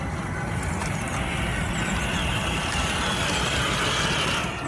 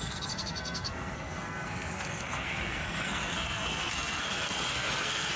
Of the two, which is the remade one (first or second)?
second